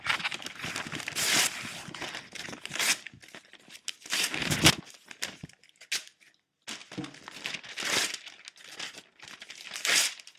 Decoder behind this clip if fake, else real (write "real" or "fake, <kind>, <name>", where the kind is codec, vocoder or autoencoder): real